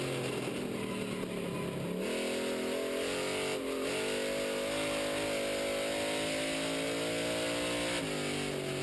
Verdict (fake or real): real